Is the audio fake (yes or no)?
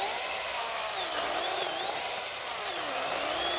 no